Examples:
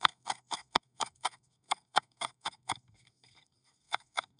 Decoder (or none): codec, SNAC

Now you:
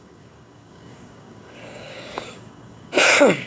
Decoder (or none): codec, DAC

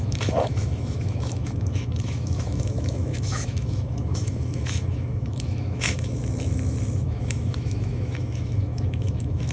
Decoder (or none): autoencoder, DAC-VAE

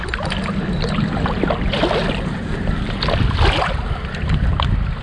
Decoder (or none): none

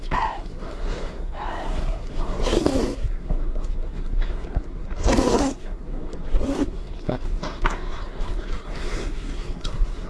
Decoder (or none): codec, SNAC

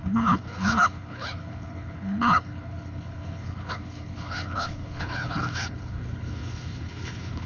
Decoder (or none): codec, HILCodec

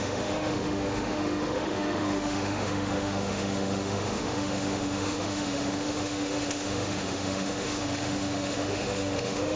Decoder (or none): autoencoder, DAC-VAE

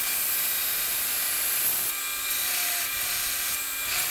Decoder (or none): none